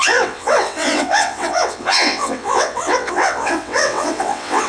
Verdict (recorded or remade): remade